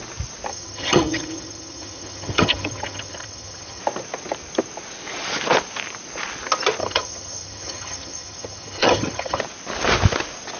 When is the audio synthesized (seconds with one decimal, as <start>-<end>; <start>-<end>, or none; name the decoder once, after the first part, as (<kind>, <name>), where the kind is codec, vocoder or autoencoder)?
0.5-3.8 (vocoder, HiFi-GAN); 6.8-9.4

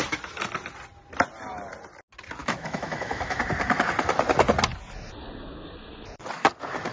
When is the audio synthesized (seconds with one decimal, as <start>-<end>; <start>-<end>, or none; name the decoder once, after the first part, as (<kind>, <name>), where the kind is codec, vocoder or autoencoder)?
2.4-3.4 (autoencoder, DAC-VAE)

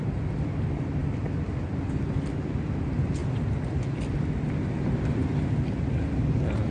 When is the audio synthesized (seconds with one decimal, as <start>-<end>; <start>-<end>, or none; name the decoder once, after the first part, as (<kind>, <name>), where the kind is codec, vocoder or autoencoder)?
none

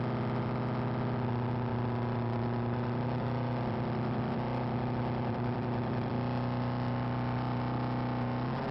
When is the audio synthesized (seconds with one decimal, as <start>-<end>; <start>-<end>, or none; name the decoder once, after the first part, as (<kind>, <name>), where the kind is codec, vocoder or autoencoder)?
1.7-6.1 (vocoder, BigVGAN v2)

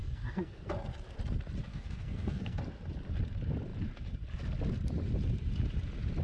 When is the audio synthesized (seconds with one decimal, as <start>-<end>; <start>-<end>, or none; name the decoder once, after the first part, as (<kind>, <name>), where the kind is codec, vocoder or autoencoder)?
0.0-0.7 (codec, SNAC); 1.7-2.6